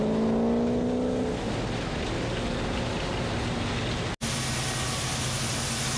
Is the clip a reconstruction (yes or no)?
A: no